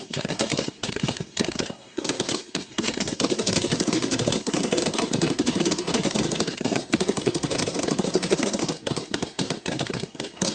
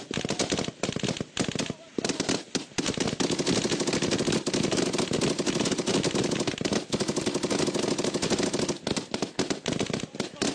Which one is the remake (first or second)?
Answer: first